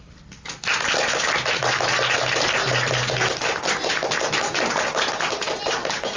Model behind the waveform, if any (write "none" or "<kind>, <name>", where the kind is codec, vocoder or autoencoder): none